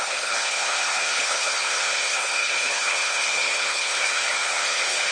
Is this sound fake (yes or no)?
yes